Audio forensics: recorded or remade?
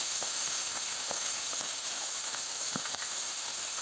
remade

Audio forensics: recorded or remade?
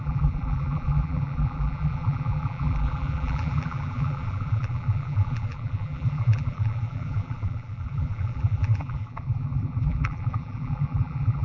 remade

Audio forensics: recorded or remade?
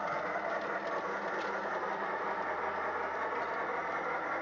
recorded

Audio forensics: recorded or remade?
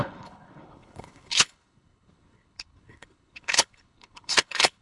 remade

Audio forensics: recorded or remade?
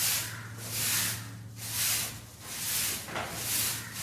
recorded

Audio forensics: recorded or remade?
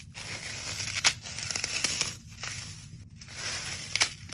recorded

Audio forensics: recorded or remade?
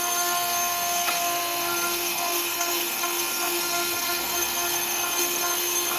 remade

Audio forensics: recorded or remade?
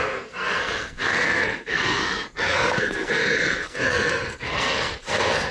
remade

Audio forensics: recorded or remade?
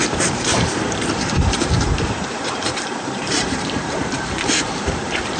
remade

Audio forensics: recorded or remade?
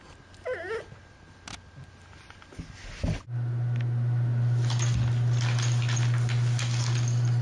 recorded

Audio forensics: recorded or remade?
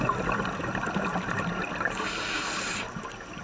recorded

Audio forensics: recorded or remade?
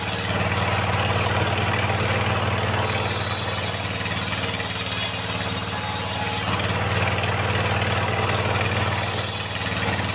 recorded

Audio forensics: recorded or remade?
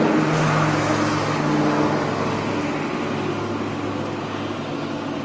recorded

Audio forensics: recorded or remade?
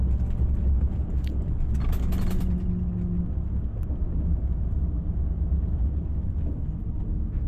recorded